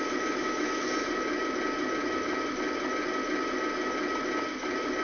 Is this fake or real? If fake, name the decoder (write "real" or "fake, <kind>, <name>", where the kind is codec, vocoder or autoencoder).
real